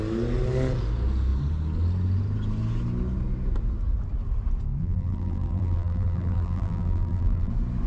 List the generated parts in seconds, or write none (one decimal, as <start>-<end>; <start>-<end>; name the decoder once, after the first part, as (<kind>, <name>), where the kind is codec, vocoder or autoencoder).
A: 4.8-7.5 (vocoder, BigVGAN v2)